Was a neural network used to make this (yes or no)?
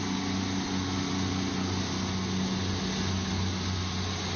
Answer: no